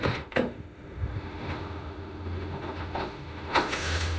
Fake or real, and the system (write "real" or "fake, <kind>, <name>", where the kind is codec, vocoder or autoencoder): fake, autoencoder, DAC-VAE